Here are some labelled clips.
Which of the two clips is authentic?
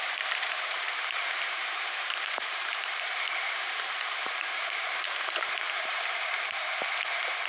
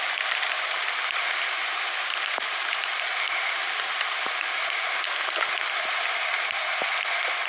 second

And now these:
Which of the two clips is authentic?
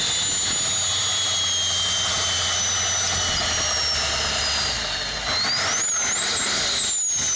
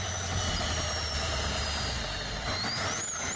first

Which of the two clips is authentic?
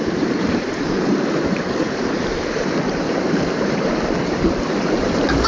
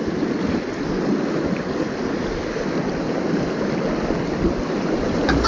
second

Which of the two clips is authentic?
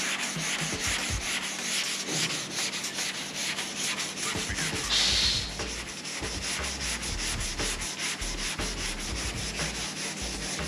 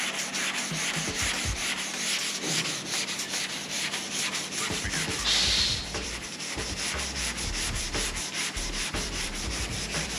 first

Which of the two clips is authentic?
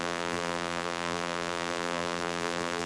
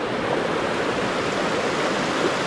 second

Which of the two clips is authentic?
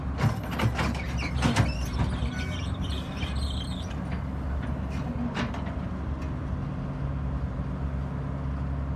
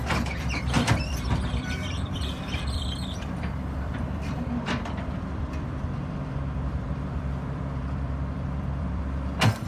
first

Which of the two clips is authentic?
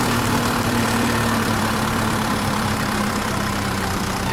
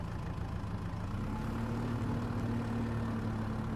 second